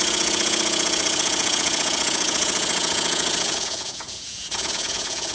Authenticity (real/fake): fake